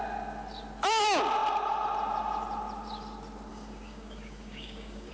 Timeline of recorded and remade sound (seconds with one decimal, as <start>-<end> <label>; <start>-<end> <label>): 0.0-3.5 recorded; 3.5-5.1 remade